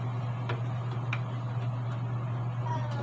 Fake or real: real